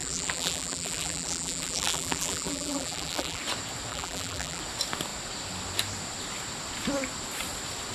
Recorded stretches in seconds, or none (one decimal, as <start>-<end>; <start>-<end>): 3.4-3.9; 4.6-7.9